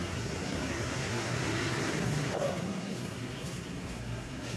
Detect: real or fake fake